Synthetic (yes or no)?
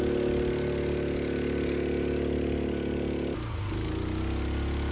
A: no